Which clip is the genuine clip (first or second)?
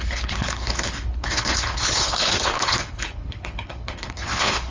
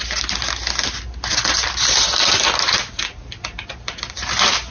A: second